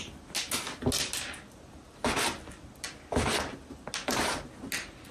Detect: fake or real real